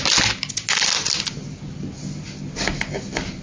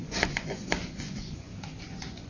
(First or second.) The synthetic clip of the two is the second